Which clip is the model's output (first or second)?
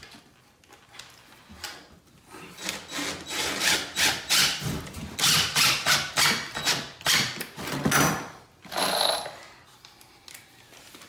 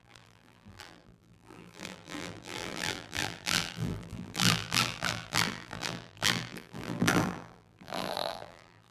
second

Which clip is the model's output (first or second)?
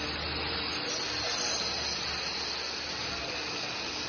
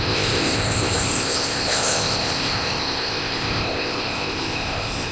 second